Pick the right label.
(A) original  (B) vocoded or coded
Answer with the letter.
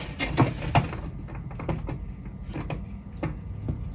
A